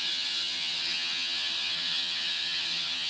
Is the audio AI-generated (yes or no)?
yes